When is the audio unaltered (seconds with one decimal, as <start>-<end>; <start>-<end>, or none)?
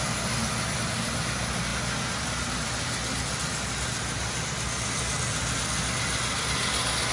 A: 0.0-7.1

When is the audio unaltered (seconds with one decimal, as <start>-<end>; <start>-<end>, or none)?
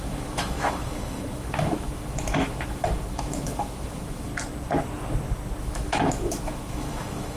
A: 4.3-5.6